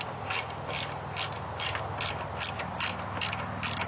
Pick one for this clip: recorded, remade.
recorded